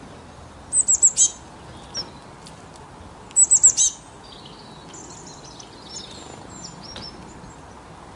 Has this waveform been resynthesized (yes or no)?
no